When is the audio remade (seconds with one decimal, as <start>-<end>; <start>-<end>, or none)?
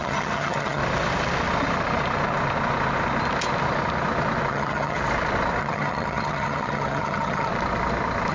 0.0-0.8; 4.5-5.0; 5.6-7.5